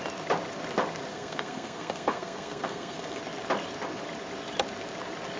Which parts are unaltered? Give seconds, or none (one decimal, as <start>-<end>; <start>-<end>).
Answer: 0.0-1.1; 3.2-5.4